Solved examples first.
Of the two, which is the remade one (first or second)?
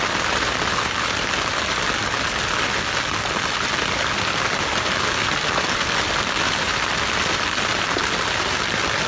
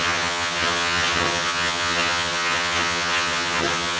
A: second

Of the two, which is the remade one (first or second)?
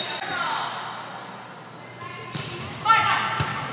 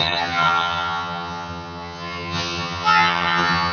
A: second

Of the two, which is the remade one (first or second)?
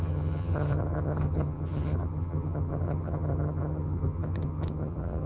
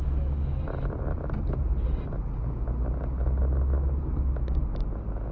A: first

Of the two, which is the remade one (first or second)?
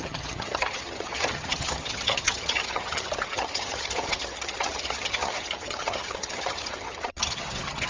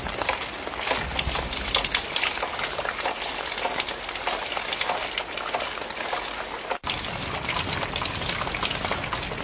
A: first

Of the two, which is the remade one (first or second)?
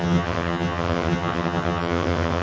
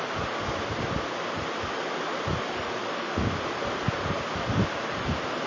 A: first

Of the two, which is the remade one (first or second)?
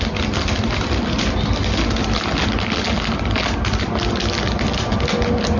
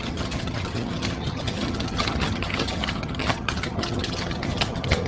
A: second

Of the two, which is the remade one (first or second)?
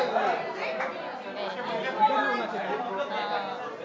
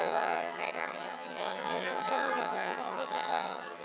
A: second